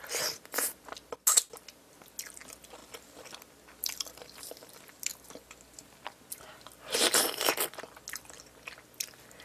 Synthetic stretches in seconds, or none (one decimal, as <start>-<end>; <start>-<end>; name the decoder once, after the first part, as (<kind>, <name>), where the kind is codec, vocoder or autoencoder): none